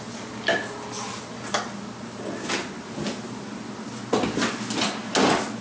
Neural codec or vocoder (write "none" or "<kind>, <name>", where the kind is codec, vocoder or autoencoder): none